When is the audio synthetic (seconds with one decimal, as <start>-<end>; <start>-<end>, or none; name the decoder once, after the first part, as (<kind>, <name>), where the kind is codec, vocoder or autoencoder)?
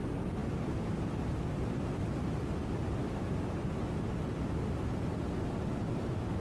none